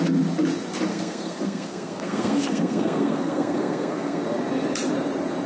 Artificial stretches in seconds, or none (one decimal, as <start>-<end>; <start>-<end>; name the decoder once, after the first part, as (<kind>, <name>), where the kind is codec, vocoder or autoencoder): 0.9-4.2 (codec, SNAC)